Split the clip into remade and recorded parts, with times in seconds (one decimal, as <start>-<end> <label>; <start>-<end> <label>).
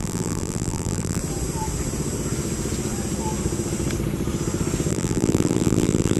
0.0-1.2 remade; 1.2-4.9 recorded; 4.9-6.2 remade